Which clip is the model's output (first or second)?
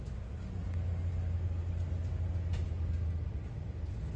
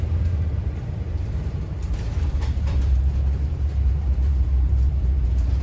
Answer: second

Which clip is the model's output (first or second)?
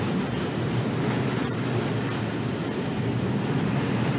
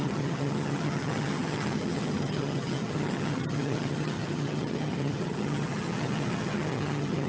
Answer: second